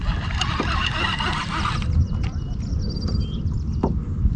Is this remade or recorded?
recorded